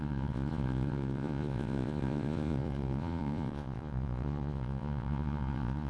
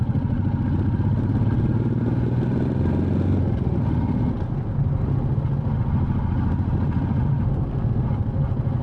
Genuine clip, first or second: second